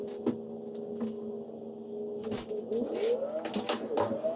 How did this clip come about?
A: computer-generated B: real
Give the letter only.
B